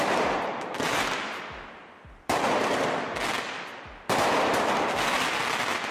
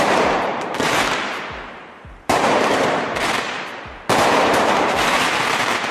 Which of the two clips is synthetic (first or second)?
second